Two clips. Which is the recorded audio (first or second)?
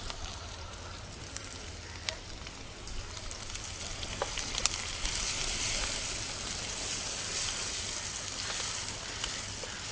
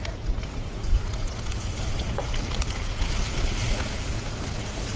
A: first